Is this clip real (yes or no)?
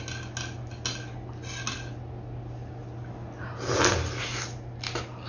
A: yes